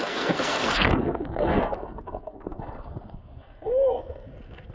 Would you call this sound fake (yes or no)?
yes